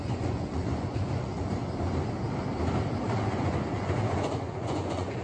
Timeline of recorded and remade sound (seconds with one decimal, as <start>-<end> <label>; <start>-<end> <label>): 0.0-1.6 remade; 1.6-3.0 recorded; 3.0-5.2 remade